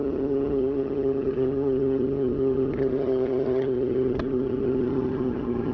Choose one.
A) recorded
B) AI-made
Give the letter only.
B